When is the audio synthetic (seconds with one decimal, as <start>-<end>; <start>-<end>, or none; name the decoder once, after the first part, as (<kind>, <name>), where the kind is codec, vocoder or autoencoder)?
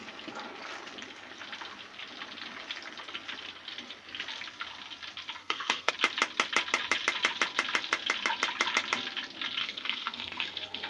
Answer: 5.4-5.9 (codec, SNAC); 9.6-10.9